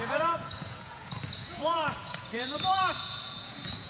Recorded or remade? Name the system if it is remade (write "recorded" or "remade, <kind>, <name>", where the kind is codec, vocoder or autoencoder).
remade, vocoder, Vocos